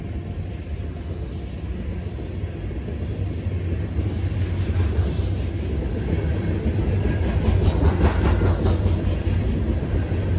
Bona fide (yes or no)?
yes